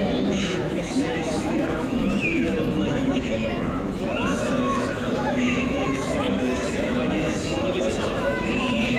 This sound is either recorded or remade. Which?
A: remade